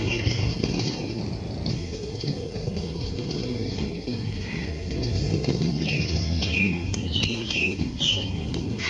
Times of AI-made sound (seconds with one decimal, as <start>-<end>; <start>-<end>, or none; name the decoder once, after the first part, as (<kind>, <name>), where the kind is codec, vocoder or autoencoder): 0.0-1.2 (codec, SNAC); 1.7-8.9

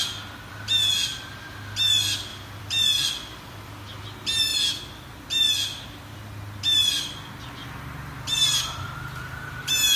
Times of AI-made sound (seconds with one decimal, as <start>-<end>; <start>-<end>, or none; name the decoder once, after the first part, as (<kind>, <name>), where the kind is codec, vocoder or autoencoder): 2.3-3.7 (vocoder, BigVGAN v2); 7.6-10.0